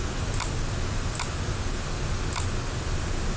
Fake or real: real